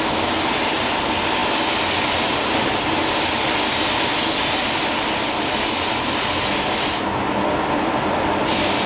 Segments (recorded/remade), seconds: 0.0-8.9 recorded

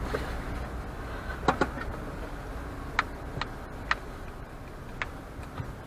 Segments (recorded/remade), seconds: 0.0-5.9 recorded

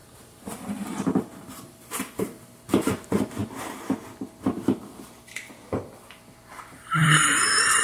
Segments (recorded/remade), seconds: 0.0-2.9 remade; 2.9-7.0 recorded; 7.0-7.8 remade

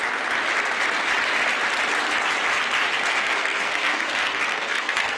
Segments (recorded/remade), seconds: 0.0-3.0 recorded; 3.0-5.2 remade

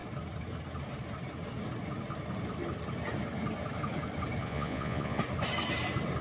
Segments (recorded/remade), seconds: 0.0-4.4 recorded; 4.4-5.2 remade; 5.2-6.2 recorded

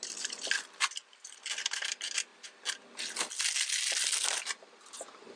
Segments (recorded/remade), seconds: 0.0-5.4 recorded